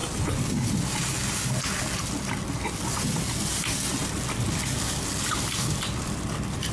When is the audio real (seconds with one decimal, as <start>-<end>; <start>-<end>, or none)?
0.0-6.7